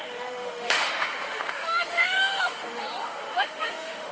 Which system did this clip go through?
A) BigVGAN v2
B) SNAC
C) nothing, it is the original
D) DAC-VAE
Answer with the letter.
D